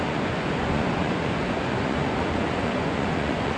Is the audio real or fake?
fake